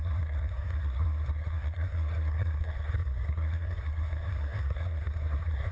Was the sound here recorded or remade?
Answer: remade